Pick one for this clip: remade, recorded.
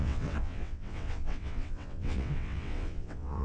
remade